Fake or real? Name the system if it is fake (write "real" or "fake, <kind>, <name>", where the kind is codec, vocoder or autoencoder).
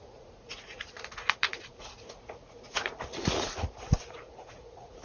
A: fake, vocoder, Vocos